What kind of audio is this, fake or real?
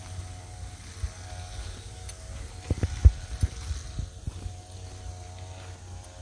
real